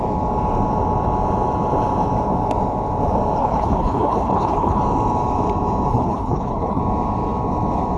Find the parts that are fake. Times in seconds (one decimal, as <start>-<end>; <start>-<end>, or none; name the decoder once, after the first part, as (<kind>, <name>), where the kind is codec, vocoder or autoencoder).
3.4-4.8 (codec, HILCodec); 5.9-6.8